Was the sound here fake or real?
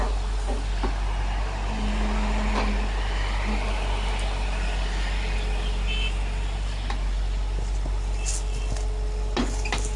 real